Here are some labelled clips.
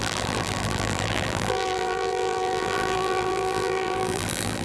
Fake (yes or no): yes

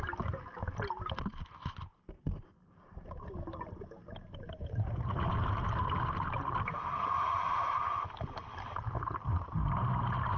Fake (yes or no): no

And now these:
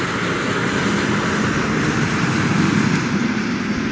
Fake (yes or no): no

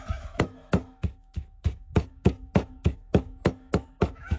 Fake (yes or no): yes